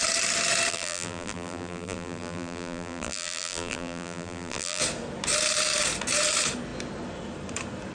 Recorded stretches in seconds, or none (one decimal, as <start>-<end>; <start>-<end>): 0.0-0.7; 4.8-7.9